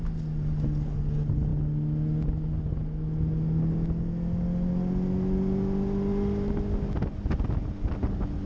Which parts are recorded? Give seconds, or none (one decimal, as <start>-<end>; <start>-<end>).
0.0-8.5